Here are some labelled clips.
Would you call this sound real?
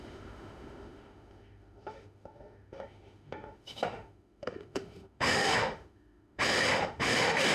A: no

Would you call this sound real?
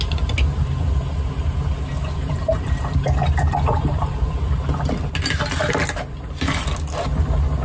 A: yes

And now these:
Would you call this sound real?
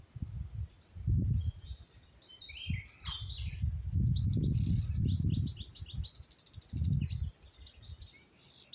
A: yes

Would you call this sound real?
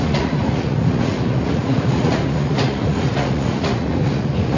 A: no